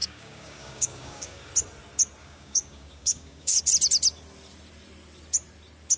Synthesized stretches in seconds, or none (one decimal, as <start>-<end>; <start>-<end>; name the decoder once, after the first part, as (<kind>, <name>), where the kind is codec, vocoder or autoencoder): 0.0-1.5 (codec, DAC); 2.2-3.6